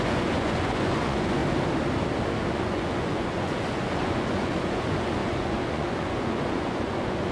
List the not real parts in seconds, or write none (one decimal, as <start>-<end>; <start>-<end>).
0.0-1.4; 2.5-7.3

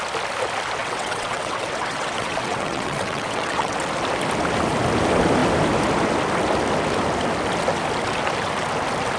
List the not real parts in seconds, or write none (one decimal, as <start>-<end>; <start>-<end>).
0.8-3.8